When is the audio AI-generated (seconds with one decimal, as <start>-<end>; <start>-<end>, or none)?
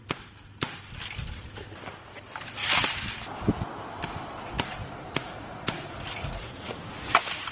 4.8-6.8